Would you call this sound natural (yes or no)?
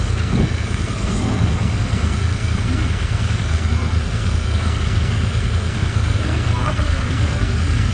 no